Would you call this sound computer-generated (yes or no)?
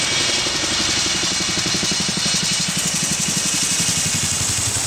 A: no